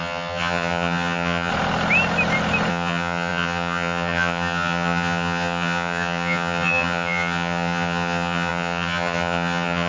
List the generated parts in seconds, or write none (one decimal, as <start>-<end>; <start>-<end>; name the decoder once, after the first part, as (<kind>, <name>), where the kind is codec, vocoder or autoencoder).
0.0-1.5 (vocoder, HiFi-GAN); 2.7-9.9